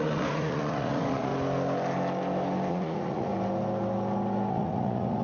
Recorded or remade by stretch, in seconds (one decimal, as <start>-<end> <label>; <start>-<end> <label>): 0.0-1.3 remade; 1.3-2.7 recorded; 2.7-3.3 remade; 3.3-4.5 recorded; 4.5-5.2 remade

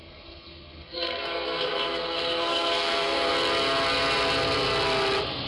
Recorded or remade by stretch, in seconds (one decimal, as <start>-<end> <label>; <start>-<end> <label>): 0.0-3.3 remade; 3.3-5.5 recorded

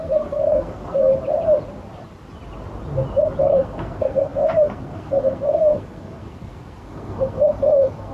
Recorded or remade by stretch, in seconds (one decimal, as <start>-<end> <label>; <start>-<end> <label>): 0.0-1.1 remade; 1.1-3.4 recorded; 3.4-8.1 remade

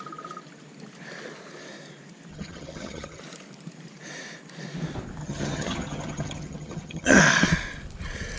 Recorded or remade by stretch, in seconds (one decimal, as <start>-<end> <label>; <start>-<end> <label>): 0.0-2.3 recorded; 2.3-3.2 remade; 3.2-5.2 recorded; 5.2-7.2 remade; 7.2-8.4 recorded

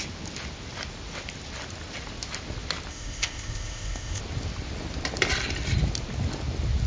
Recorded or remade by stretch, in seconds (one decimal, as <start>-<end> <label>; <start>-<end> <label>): 0.0-2.9 recorded; 2.9-4.2 remade; 4.2-6.9 recorded

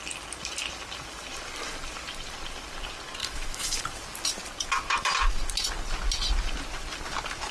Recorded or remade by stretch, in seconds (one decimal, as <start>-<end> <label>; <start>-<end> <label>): 0.0-3.2 recorded; 3.2-3.8 remade; 3.8-7.5 recorded

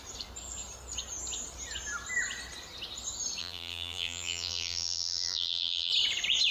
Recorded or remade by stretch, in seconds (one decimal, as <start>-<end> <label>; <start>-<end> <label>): 0.0-3.4 recorded; 3.4-5.9 remade; 5.9-6.5 recorded